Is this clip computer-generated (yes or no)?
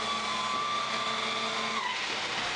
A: no